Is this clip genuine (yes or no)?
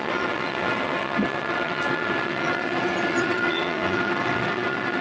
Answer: no